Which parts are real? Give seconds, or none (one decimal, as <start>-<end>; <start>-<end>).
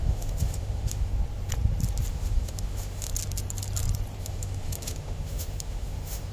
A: 1.1-2.1; 3.1-4.2